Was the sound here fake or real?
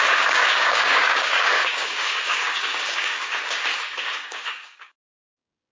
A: fake